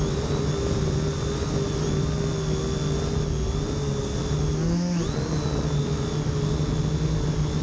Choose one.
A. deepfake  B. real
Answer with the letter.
B